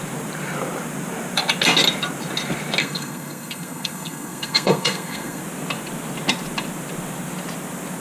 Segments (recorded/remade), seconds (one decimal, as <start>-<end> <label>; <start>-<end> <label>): 0.0-2.8 recorded; 2.8-5.4 remade; 5.4-8.0 recorded